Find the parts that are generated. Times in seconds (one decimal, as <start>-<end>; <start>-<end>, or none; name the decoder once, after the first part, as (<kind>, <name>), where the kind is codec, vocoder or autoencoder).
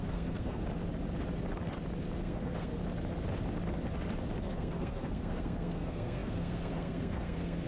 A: 0.0-0.6 (codec, SNAC); 2.2-2.8; 4.4-7.7